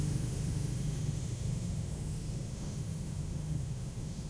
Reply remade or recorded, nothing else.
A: remade